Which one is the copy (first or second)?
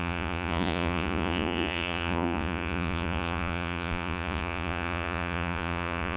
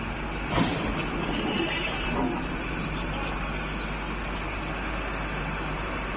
first